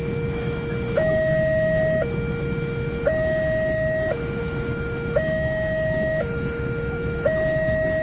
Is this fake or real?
fake